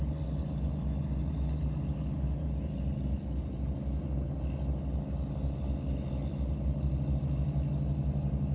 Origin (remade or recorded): recorded